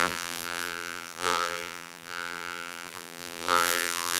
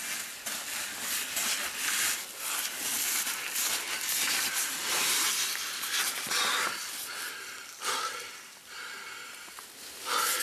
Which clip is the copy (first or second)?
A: first